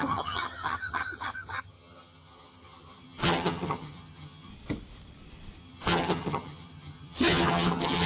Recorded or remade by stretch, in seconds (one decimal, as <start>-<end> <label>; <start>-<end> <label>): 0.0-4.5 remade; 4.5-5.6 recorded; 5.6-8.1 remade